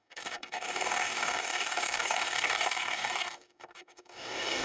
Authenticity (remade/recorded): remade